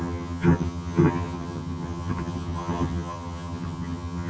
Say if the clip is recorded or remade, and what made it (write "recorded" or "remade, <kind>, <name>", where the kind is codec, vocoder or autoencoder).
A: remade, vocoder, HiFi-GAN